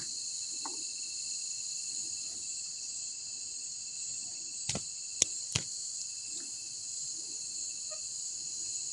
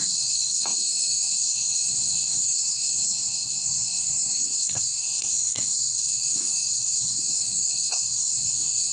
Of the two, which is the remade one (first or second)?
second